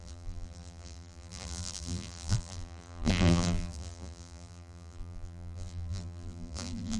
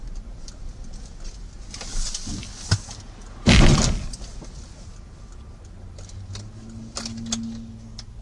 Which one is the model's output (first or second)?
first